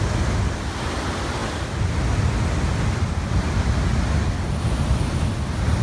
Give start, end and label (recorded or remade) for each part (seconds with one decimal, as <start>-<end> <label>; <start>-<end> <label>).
0.0-5.8 recorded